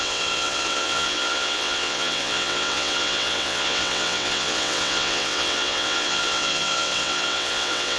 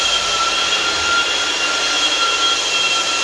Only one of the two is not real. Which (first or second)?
first